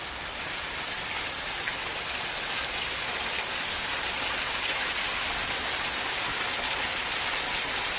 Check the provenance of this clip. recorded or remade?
recorded